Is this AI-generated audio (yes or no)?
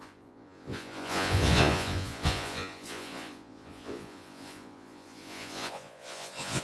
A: yes